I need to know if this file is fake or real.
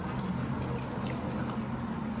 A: real